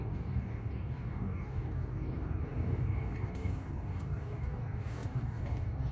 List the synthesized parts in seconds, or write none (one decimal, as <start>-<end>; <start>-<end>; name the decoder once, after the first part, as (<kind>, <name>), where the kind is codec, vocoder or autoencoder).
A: 0.0-5.9 (codec, DAC)